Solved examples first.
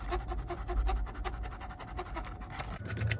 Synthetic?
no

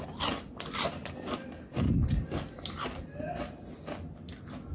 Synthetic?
no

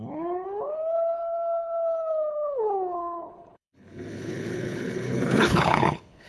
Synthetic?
yes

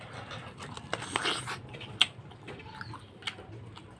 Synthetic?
no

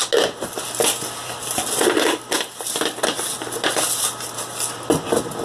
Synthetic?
no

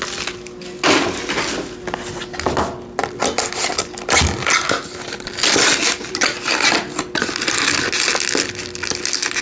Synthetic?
no